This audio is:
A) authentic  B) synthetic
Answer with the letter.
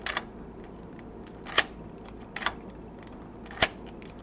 A